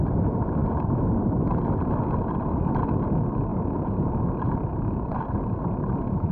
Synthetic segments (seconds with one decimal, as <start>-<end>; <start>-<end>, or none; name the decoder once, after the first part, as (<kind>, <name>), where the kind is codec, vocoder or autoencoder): 3.5-4.1 (vocoder, Vocos); 4.7-5.2